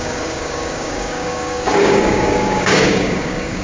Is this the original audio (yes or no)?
no